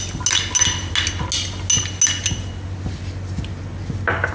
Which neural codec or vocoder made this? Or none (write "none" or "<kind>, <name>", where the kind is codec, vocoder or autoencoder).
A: none